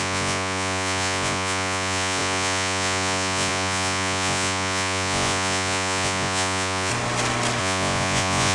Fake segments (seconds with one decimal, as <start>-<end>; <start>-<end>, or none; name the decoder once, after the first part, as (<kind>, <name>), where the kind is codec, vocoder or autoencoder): 0.0-6.9 (vocoder, Vocos); 7.6-8.5